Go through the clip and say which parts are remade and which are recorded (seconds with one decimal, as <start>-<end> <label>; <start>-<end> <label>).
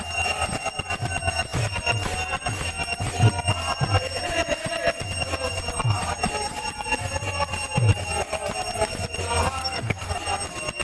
0.0-9.6 recorded; 9.6-10.1 remade; 10.1-10.8 recorded